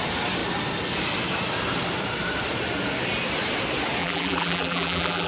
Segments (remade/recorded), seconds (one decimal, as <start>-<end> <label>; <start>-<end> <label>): 0.0-4.0 recorded; 4.0-5.3 remade